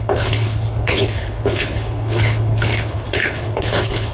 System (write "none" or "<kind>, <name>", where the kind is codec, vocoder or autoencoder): codec, HILCodec